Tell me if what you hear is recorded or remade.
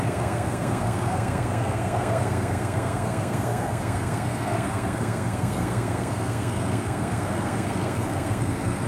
remade